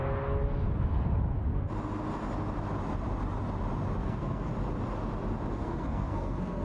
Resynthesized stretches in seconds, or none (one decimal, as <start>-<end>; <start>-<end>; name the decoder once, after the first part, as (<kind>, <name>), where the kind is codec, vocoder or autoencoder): 4.0-4.5 (codec, SNAC); 5.5-6.6

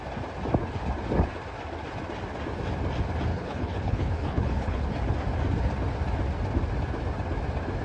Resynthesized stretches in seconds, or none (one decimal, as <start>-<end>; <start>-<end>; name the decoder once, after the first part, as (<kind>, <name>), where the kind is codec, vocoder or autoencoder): 3.3-4.8 (codec, HILCodec)

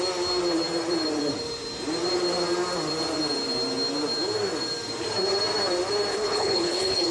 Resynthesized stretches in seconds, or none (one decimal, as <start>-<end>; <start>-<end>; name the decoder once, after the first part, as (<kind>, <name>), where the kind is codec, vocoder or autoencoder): 6.1-7.1 (codec, HILCodec)